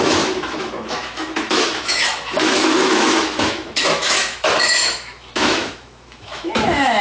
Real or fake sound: fake